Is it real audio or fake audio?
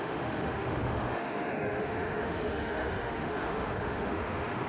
fake